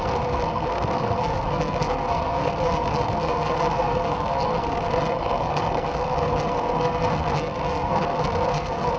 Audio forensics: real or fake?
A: fake